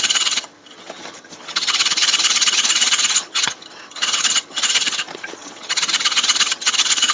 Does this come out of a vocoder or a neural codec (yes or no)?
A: yes